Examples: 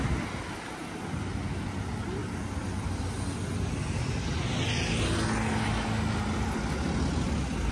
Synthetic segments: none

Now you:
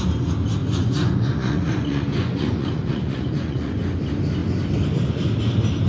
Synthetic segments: 0.6-3.8

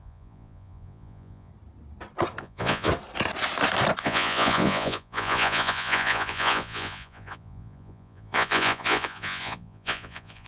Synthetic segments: 0.0-1.5; 2.4-2.9; 4.0-10.5

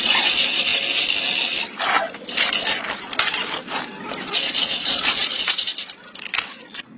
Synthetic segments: 0.0-0.7; 4.3-5.7; 6.6-7.0

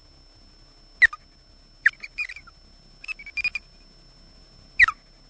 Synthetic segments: none